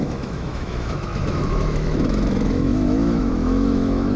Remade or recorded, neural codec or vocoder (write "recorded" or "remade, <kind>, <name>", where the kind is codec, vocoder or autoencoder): remade, autoencoder, DAC-VAE